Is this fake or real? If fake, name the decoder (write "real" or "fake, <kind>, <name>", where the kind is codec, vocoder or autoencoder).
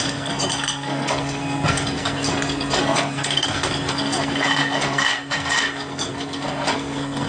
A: fake, codec, SNAC